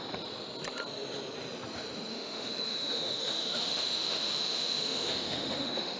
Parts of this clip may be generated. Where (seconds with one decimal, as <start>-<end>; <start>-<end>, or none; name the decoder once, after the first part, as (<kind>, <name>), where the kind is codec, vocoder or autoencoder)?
2.1-6.0 (autoencoder, DAC-VAE)